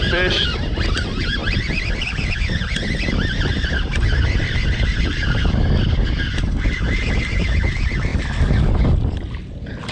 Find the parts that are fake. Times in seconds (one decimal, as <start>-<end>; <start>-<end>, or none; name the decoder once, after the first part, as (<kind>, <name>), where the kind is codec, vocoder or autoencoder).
none